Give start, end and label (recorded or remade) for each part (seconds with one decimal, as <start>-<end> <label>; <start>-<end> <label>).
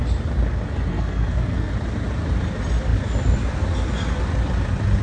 0.0-0.9 recorded; 0.9-1.7 remade; 1.7-5.0 recorded